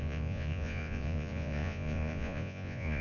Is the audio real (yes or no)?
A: no